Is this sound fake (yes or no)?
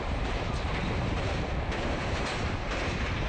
no